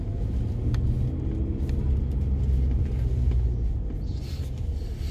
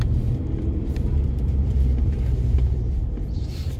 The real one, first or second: first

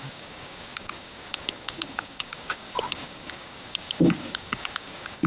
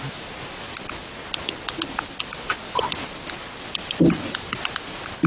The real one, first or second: second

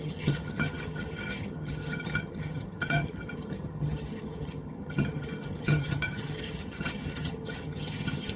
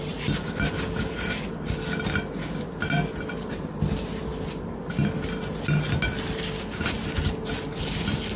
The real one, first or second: second